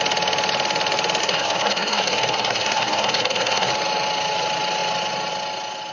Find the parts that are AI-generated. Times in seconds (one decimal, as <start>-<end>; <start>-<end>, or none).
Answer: 1.2-3.7